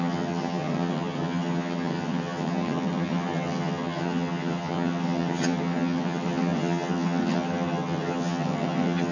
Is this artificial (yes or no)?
yes